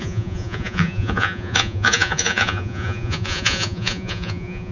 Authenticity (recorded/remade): remade